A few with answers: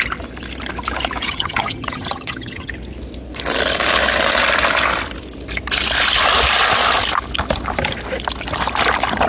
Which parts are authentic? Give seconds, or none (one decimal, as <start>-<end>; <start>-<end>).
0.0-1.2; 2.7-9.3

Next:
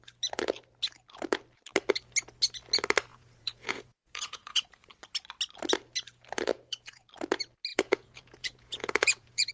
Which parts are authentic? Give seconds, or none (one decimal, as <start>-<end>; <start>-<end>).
0.0-3.1; 4.9-6.5; 7.1-7.7

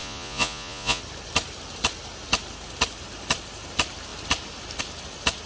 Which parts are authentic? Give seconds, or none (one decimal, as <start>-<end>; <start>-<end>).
1.0-5.5

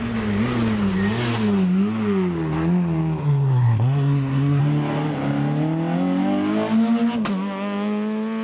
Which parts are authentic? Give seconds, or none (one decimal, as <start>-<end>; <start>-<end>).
0.0-3.2; 4.6-8.4